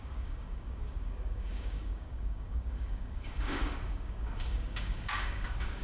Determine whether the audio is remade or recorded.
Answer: remade